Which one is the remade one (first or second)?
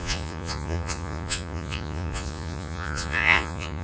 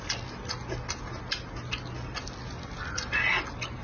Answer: first